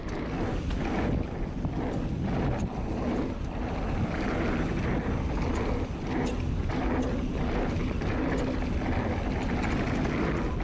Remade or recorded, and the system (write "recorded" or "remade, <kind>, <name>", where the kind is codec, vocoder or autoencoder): recorded